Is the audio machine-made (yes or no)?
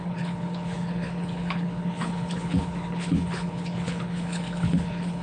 yes